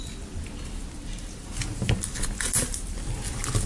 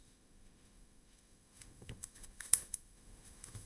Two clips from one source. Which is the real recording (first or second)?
first